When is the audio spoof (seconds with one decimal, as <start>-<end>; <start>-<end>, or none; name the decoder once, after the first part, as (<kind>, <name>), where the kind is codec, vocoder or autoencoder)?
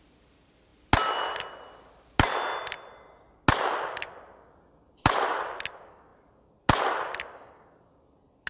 none